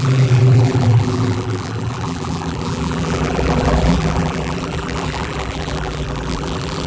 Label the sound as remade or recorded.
remade